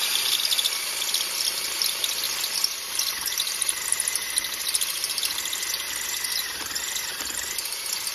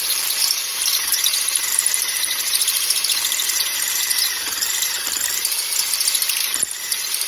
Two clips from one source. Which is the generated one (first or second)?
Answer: second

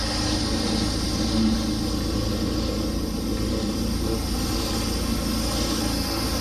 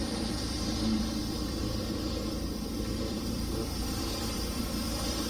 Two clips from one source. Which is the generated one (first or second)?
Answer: second